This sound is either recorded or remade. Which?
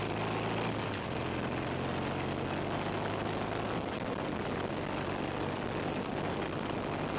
recorded